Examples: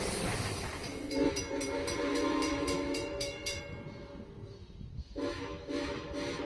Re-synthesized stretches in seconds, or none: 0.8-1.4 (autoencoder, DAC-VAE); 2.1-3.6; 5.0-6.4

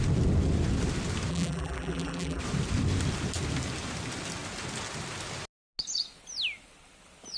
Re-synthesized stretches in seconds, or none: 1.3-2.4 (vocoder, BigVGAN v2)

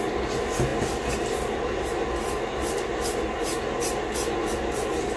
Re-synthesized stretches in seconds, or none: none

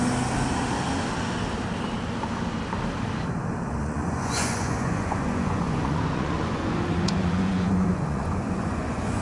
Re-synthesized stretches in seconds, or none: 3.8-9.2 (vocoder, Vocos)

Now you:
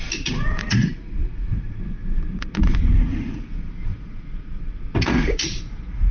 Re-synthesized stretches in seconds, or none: 0.0-6.1 (vocoder, Vocos)

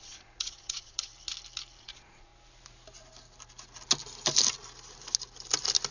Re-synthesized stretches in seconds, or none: 0.0-1.1 (vocoder, Vocos); 1.8-2.3

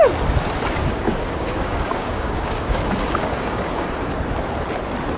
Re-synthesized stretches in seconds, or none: 0.8-3.9 (codec, DAC)